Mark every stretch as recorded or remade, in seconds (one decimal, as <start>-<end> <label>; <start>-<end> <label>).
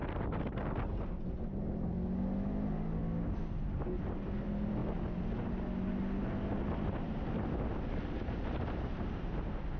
0.0-9.8 recorded